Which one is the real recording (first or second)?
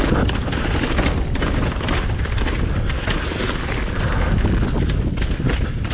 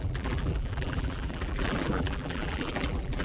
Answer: first